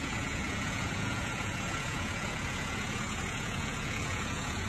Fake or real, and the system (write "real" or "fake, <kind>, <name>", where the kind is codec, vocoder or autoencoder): fake, vocoder, Vocos